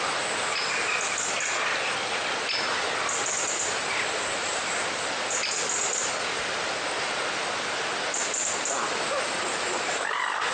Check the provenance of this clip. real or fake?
real